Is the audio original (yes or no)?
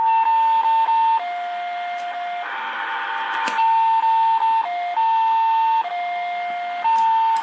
yes